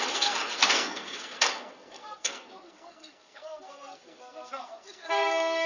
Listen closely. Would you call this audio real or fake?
fake